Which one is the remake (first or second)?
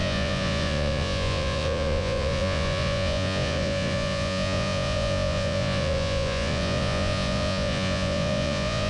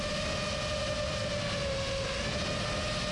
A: first